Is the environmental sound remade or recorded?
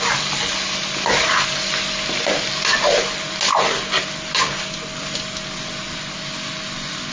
recorded